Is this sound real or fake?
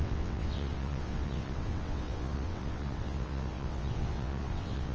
fake